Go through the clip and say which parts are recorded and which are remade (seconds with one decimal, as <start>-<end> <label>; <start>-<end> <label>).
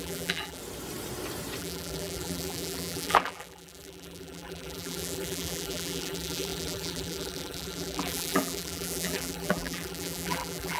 0.0-0.6 remade; 0.6-1.6 recorded; 1.6-10.8 remade